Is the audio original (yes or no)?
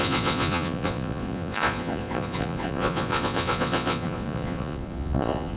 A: no